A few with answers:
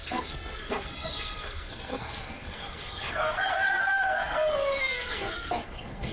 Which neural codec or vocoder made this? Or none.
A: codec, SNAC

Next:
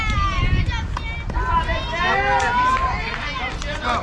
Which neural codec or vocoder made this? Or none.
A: none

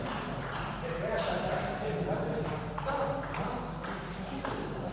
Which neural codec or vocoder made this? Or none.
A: none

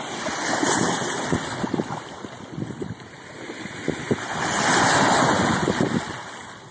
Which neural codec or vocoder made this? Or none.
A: none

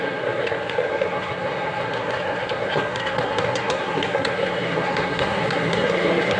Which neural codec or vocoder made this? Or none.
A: codec, SNAC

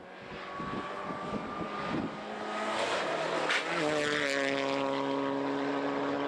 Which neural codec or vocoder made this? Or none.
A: none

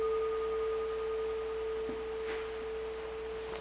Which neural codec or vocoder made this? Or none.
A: none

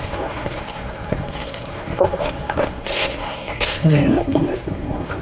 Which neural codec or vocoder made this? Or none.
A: codec, SNAC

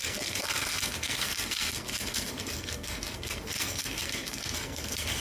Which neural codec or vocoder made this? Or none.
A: codec, SNAC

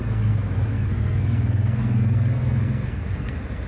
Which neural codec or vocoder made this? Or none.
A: codec, SNAC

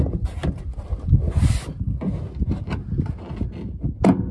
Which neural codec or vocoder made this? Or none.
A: none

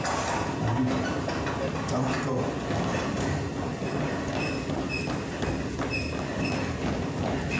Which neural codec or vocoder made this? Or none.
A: none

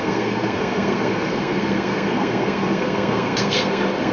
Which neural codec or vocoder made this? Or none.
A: codec, SNAC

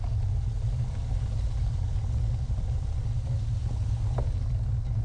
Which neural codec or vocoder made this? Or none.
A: none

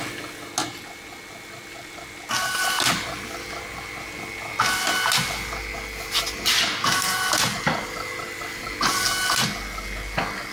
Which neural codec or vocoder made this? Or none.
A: none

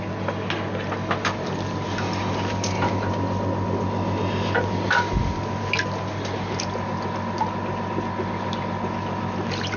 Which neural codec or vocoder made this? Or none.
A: none